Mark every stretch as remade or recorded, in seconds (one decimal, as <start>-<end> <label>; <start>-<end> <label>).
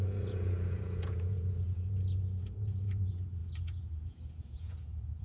0.0-5.2 remade